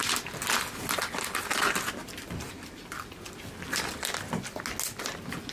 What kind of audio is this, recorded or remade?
recorded